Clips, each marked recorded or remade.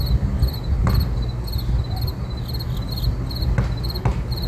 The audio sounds recorded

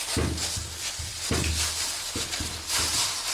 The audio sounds recorded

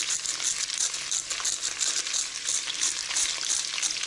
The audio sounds recorded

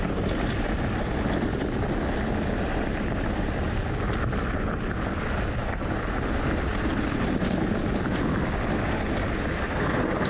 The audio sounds recorded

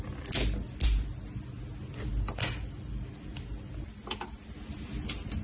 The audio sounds recorded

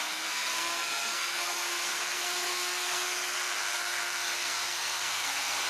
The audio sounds remade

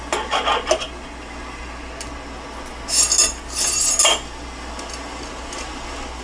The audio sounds recorded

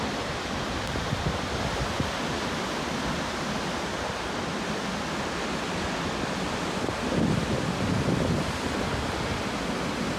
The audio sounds recorded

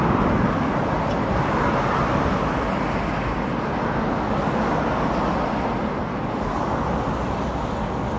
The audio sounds recorded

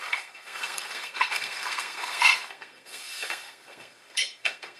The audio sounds remade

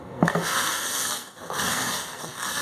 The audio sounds remade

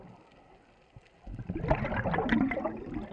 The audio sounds recorded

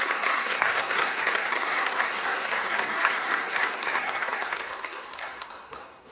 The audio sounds remade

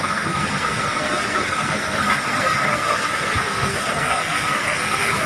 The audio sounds remade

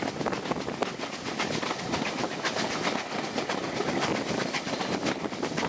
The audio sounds recorded